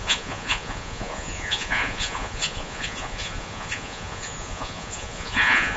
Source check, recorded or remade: remade